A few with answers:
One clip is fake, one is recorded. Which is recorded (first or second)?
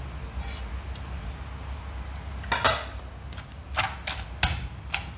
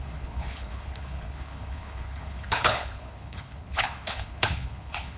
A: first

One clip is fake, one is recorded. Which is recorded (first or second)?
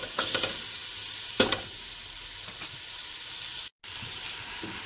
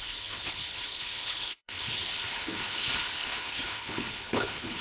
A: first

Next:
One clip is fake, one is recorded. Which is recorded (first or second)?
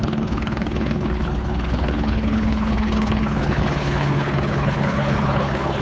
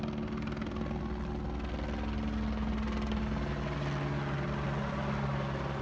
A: second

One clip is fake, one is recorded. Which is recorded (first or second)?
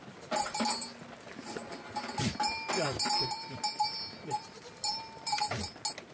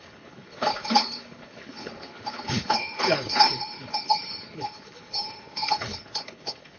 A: first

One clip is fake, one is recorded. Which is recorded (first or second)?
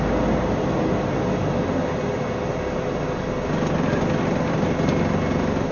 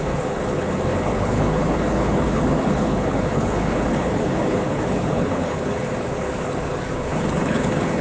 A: first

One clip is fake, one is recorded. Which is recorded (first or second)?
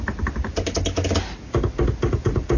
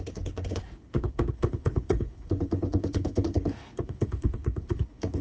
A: first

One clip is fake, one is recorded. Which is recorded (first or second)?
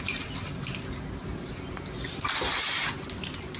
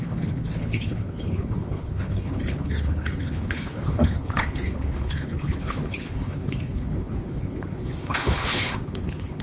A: first